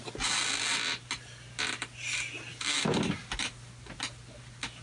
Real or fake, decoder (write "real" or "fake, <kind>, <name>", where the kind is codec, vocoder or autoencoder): real